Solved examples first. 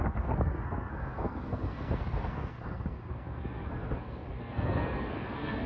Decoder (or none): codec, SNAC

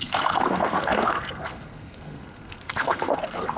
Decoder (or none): codec, SNAC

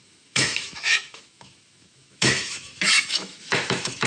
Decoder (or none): autoencoder, DAC-VAE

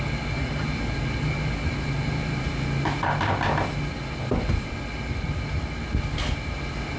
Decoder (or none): none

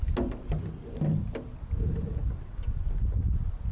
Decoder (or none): none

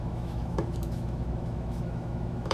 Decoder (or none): autoencoder, DAC-VAE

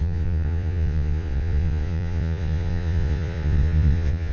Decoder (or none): vocoder, Vocos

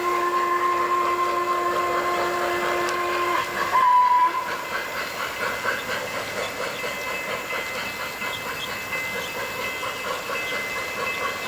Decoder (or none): none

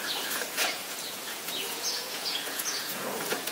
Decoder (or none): vocoder, Vocos